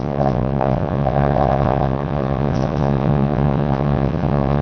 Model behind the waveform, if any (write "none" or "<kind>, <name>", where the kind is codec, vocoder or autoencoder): vocoder, WaveNeXt